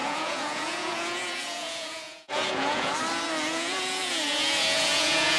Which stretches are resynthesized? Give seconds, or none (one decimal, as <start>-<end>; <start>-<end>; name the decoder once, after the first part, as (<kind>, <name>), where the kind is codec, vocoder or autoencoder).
0.0-2.9 (vocoder, Vocos); 3.5-5.4